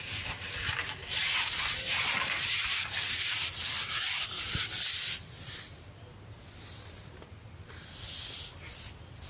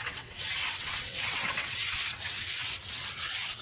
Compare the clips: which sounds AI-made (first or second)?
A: second